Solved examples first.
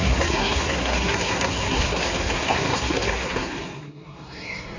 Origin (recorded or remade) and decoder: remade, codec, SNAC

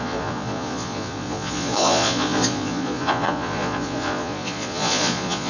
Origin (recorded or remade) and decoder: remade, vocoder, Vocos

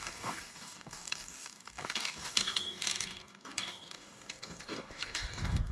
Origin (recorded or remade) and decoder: remade, codec, DAC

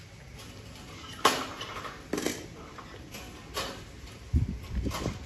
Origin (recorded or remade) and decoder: recorded